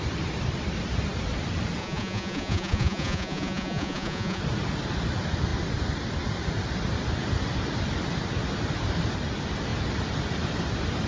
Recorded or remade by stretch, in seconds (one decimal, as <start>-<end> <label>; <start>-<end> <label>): 0.0-1.8 recorded; 1.8-4.4 remade; 4.4-11.1 recorded